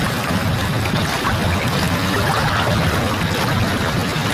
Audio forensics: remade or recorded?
recorded